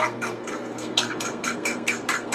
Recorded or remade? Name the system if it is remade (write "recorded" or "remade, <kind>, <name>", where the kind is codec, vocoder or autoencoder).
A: remade, codec, SNAC